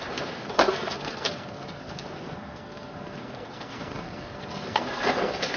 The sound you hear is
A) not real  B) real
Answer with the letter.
A